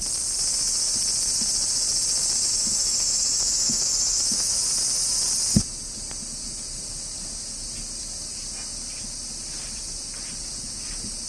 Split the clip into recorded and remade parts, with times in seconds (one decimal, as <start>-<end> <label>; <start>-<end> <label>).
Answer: 0.0-2.5 recorded; 2.5-4.6 remade; 4.6-11.3 recorded